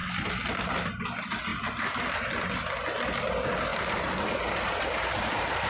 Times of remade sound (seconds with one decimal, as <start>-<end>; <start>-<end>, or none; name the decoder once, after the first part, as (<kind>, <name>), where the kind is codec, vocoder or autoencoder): 1.5-2.1 (vocoder, BigVGAN v2); 3.7-5.7